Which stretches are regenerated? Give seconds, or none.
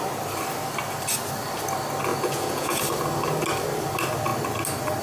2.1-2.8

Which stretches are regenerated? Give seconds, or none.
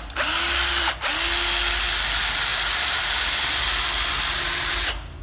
none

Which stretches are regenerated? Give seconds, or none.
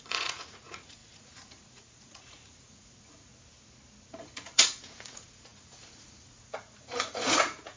0.0-3.3; 4.1-7.8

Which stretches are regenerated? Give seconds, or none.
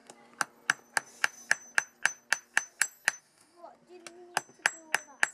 3.2-3.6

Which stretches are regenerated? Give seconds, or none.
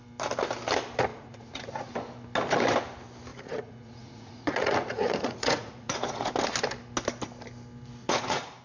1.1-1.9; 3.3-6.3; 8.0-8.6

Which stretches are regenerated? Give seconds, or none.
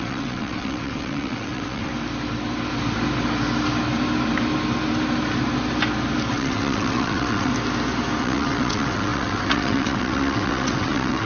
0.0-1.9; 6.3-7.5; 8.2-11.3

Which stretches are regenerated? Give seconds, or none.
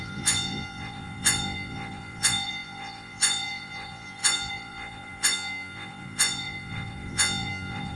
0.0-8.0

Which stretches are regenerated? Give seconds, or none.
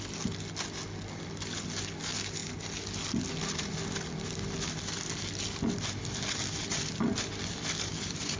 none